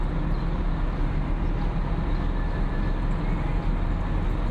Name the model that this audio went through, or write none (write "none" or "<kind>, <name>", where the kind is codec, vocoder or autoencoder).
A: none